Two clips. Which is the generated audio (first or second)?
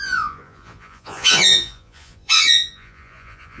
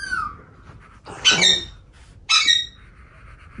first